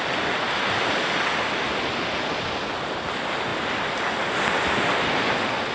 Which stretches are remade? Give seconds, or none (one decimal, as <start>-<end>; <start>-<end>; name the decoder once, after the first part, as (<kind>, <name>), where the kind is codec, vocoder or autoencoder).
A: none